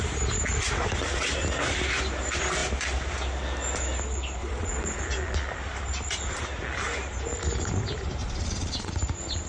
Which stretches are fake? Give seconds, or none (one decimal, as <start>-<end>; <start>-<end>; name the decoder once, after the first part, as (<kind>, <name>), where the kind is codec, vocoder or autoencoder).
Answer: 4.4-5.0 (vocoder, Vocos); 8.2-8.9